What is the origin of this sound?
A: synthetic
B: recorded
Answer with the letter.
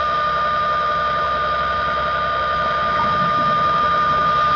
A